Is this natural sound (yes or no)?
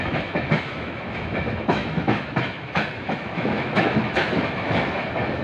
no